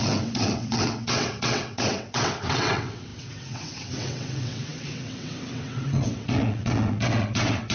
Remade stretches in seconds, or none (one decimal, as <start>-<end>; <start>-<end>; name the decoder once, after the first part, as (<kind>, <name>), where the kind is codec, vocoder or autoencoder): 0.0-7.7 (vocoder, WaveNeXt)